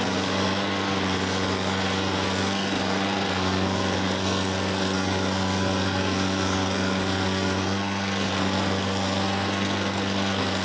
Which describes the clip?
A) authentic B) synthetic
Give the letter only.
B